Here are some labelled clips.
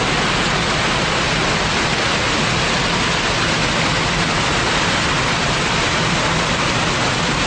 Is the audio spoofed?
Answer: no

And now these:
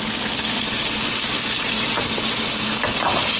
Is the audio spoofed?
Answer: no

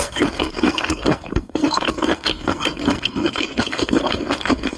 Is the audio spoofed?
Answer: yes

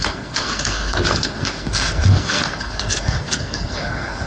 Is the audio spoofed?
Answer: yes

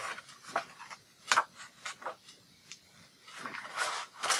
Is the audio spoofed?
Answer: no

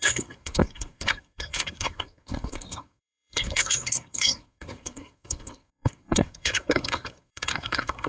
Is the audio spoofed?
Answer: yes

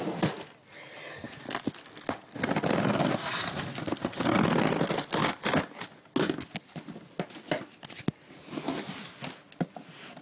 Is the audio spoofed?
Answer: no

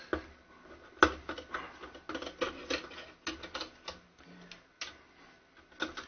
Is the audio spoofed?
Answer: no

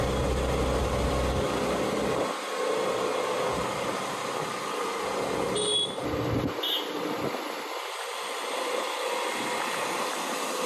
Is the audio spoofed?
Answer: no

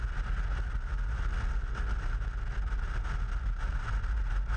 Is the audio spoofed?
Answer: no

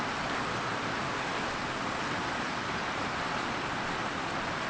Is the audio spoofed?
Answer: no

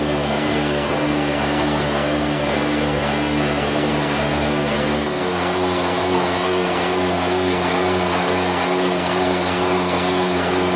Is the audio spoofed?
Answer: yes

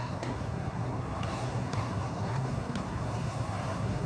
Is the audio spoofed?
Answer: yes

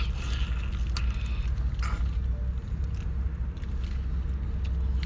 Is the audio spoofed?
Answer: no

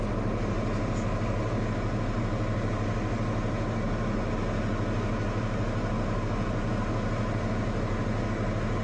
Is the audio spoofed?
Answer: no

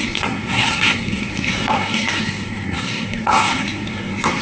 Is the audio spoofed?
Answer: yes